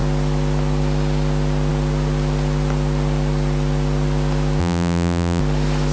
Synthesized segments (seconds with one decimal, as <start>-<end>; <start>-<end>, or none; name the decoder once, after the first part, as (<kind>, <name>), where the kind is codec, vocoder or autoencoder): 4.6-5.4 (vocoder, BigVGAN v2)